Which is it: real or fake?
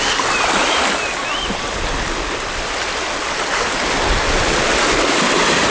real